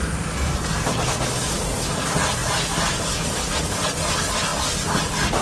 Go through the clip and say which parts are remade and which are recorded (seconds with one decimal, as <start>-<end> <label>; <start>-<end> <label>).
0.0-5.4 recorded